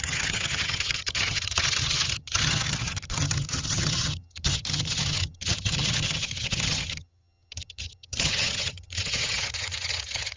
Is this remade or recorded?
remade